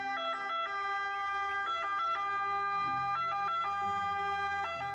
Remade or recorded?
recorded